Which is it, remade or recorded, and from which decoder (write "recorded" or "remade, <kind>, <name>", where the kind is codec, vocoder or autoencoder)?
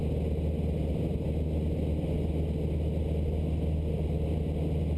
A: recorded